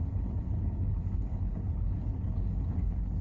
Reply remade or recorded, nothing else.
remade